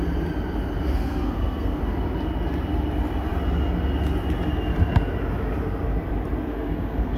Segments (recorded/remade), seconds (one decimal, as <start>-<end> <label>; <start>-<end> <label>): 0.0-0.9 recorded; 0.9-1.8 remade; 1.8-6.5 recorded; 6.5-7.2 remade